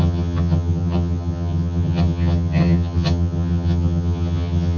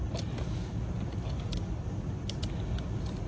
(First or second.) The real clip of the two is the second